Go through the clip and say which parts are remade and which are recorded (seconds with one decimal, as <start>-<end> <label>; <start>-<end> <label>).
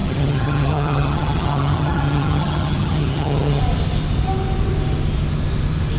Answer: 0.0-3.6 remade; 3.6-6.0 recorded